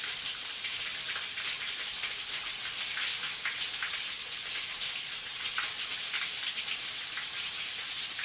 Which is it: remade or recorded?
recorded